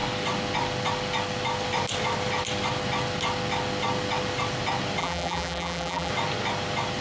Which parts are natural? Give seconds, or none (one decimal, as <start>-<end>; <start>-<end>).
0.0-5.0; 6.1-7.0